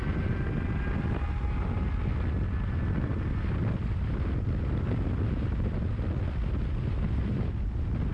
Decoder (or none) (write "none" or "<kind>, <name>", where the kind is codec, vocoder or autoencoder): none